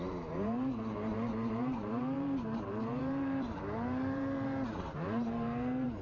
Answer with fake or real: fake